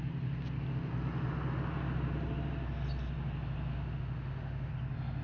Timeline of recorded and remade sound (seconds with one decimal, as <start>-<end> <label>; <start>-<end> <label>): 0.0-3.7 recorded; 3.7-4.7 remade; 4.7-5.2 recorded